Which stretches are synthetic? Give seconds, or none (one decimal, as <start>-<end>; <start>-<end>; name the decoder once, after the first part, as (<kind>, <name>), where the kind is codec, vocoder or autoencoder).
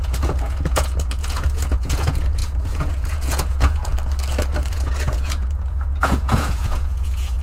0.0-3.9 (vocoder, Vocos); 4.7-7.4